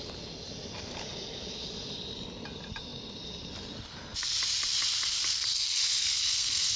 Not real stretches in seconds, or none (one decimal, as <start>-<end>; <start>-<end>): 5.9-6.8